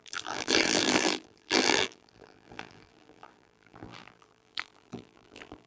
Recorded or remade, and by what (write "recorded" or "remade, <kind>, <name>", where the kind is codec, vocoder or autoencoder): remade, vocoder, BigVGAN v2